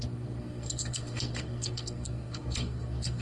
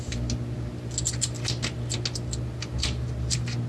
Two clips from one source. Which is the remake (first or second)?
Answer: first